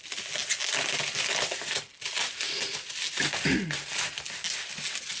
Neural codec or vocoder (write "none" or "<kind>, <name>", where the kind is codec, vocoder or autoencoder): none